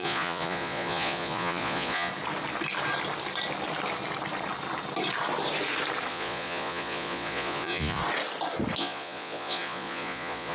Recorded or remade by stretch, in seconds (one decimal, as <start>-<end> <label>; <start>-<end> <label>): 0.0-2.1 remade; 2.1-6.1 recorded; 6.1-8.0 remade; 8.0-8.8 recorded; 8.8-10.5 remade